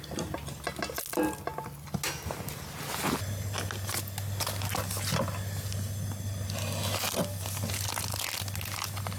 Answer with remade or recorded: recorded